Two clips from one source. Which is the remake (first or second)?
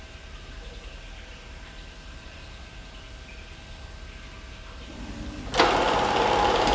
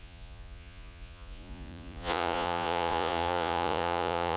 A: second